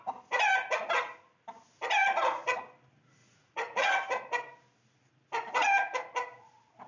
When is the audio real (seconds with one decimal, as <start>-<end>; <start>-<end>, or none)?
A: 0.0-3.2; 3.9-6.9